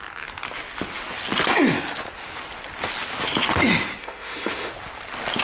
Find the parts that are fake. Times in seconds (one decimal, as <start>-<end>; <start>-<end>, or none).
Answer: 4.0-4.7